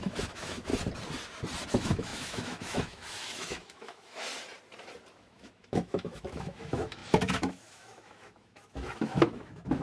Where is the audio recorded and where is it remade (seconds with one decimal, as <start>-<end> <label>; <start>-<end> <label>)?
0.0-0.7 remade; 0.7-1.7 recorded; 1.7-4.3 remade; 4.3-5.1 recorded; 5.1-9.8 remade